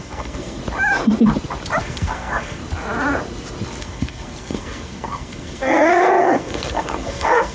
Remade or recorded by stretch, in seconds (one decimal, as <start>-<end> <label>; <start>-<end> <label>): 0.0-0.6 remade; 0.6-1.8 recorded; 1.8-2.6 remade; 2.6-3.8 recorded; 3.8-7.5 remade